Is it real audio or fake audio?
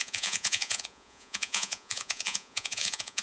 fake